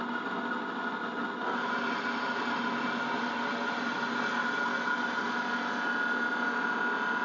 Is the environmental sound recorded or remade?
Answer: recorded